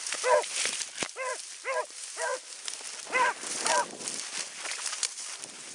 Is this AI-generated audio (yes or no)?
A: no